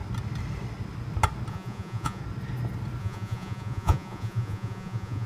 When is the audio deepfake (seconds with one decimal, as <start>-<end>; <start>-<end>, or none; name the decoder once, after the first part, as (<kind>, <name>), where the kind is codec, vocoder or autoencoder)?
1.5-2.2 (vocoder, Vocos); 3.0-5.3